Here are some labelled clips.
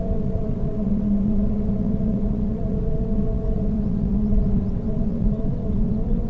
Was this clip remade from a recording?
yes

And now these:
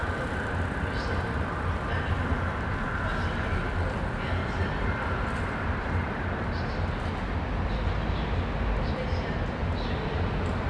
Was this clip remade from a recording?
no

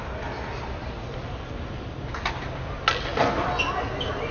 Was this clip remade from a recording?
no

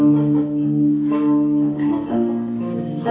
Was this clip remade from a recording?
yes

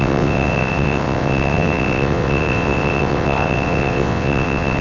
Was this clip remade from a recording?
yes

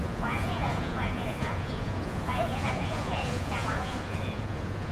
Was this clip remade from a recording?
yes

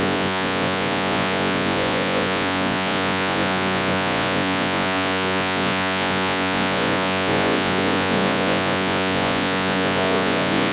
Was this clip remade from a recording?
yes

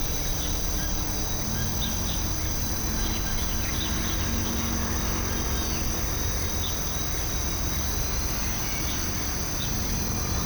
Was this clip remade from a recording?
no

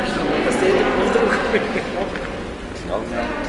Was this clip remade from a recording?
no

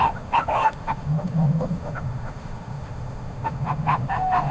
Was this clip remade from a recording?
yes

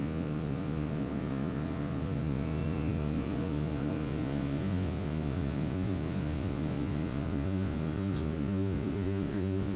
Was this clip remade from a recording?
yes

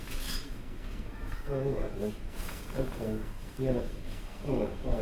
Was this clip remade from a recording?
yes